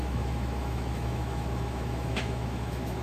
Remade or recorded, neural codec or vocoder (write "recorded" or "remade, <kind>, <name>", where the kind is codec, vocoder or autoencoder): remade, autoencoder, DAC-VAE